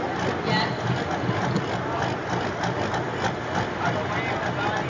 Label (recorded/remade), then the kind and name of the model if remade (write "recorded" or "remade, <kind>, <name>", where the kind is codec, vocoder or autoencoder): recorded